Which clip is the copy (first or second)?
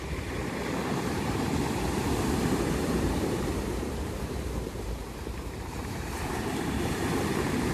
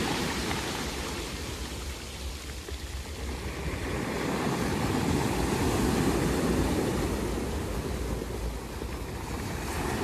first